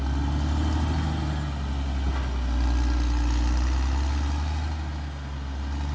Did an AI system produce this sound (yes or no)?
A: no